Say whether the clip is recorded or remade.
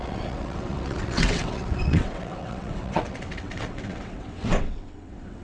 remade